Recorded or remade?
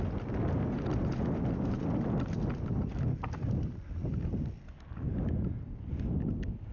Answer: recorded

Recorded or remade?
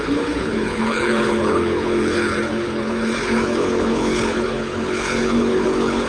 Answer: remade